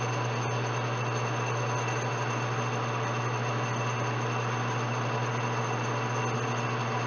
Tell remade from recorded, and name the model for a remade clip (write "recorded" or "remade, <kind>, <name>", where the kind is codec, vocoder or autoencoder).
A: recorded